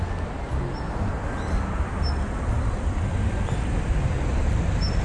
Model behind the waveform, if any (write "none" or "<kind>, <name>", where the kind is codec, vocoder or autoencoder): none